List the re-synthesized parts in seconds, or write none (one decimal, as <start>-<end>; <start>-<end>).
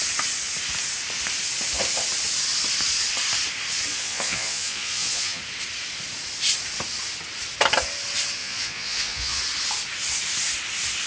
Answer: 3.9-5.4; 8.4-9.4